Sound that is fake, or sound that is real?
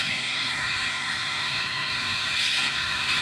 fake